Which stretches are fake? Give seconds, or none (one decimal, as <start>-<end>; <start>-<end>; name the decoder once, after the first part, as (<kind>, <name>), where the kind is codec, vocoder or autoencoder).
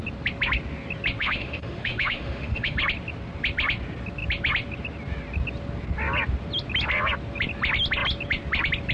1.2-2.8 (autoencoder, DAC-VAE)